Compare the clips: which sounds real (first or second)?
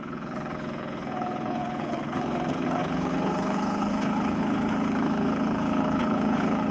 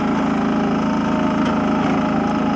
second